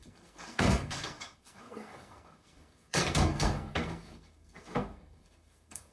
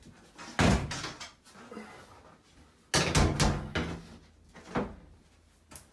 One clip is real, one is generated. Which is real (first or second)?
second